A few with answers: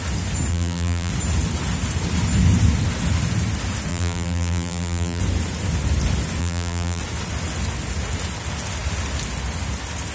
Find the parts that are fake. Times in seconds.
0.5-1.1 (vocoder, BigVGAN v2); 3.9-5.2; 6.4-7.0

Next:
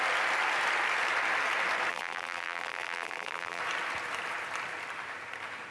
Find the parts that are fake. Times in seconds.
1.9-3.6 (vocoder, BigVGAN v2)

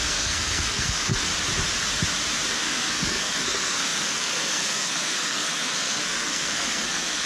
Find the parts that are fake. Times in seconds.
0.0-1.3 (codec, SNAC); 2.5-7.3

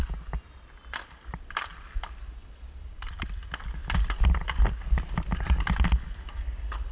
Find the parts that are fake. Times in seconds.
none

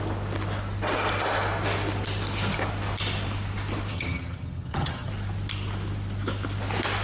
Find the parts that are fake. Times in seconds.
3.9-5.1 (vocoder, HiFi-GAN)

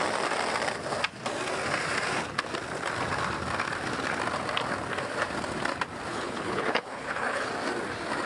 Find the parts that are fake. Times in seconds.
6.1-7.5 (codec, HILCodec)